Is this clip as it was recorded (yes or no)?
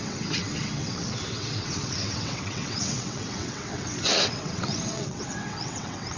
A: no